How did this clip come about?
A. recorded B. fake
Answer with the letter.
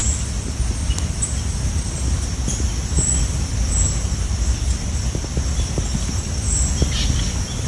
A